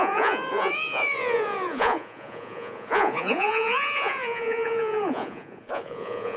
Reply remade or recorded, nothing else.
remade